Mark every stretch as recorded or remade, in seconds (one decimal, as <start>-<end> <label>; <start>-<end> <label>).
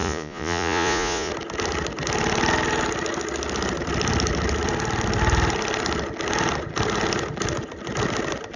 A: 0.0-1.3 remade; 1.3-8.6 recorded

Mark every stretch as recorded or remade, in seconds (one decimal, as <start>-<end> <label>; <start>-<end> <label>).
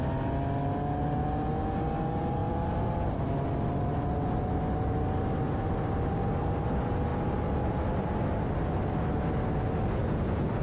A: 0.0-2.4 recorded; 2.4-3.3 remade; 3.3-7.1 recorded; 7.1-8.1 remade; 8.1-10.6 recorded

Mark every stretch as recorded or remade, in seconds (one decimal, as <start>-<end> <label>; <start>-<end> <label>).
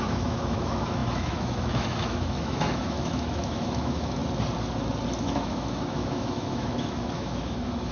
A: 0.0-4.2 remade; 4.2-5.2 recorded; 5.2-7.9 remade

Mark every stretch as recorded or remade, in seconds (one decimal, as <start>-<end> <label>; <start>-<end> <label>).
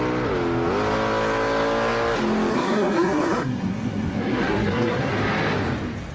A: 0.0-2.5 recorded; 2.5-5.1 remade; 5.1-6.1 recorded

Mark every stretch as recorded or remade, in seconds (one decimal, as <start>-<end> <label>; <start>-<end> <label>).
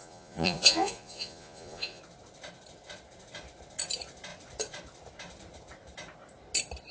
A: 0.0-2.0 remade; 2.0-6.9 recorded